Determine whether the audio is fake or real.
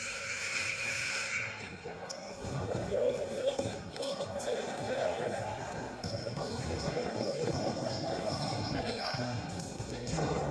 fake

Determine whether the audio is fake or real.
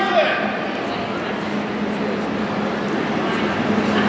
real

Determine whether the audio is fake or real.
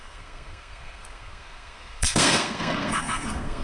fake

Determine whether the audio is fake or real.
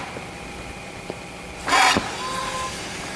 real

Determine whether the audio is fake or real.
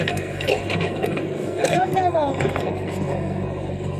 fake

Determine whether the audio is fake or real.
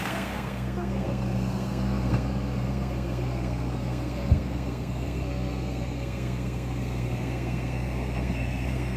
fake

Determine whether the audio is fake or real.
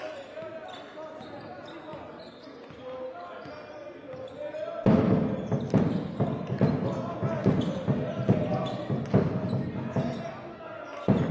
real